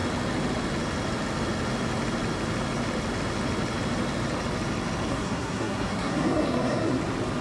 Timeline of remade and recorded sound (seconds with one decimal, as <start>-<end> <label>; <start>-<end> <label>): 0.0-5.1 recorded; 5.1-7.0 remade; 7.0-7.4 recorded

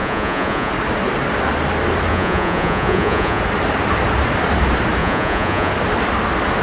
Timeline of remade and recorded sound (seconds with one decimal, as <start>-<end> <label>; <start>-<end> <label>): 0.0-0.7 remade; 0.7-2.1 recorded; 2.1-3.4 remade; 3.4-5.0 recorded; 5.0-5.7 remade; 5.7-6.6 recorded

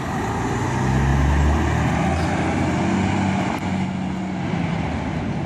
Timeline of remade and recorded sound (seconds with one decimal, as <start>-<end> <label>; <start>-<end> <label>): 0.0-5.5 recorded

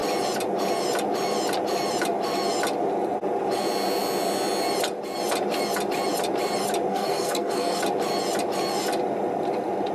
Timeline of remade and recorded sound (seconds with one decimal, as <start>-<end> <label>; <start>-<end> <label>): 0.0-6.9 recorded; 6.9-7.8 remade; 7.8-9.9 recorded

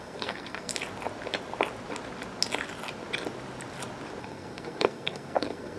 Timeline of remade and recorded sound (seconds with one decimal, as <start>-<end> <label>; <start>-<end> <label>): 0.0-0.7 remade; 0.7-4.2 recorded; 4.2-5.8 remade

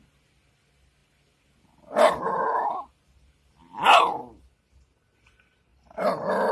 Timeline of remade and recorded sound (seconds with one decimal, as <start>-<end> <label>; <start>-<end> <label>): 0.0-5.7 recorded; 5.7-6.5 remade

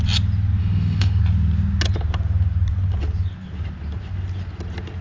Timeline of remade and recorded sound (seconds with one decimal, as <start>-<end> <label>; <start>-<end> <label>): 0.0-0.6 recorded; 0.6-1.2 remade; 1.2-5.0 recorded

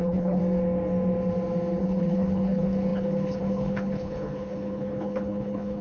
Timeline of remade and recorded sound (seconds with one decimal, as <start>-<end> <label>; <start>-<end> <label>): 0.0-0.4 remade; 0.4-1.8 recorded; 1.8-5.8 remade